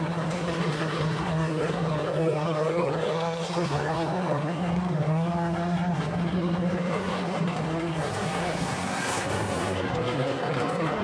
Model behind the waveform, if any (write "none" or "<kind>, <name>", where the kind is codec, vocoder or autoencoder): codec, SNAC